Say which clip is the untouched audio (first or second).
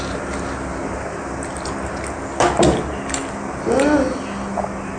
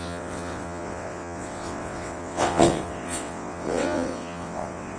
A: first